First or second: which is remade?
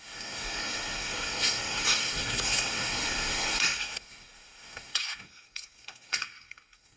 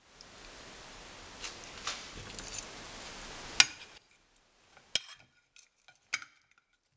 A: first